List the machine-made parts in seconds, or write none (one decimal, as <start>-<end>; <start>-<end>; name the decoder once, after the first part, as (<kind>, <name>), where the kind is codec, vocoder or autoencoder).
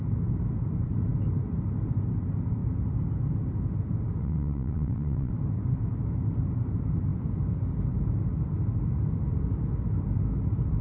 4.2-5.3 (vocoder, WaveNeXt)